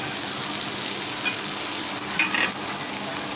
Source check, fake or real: real